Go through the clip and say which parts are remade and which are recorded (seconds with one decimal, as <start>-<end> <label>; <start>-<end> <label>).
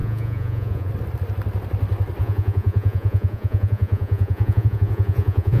0.0-0.9 remade; 0.9-2.2 recorded; 2.2-5.6 remade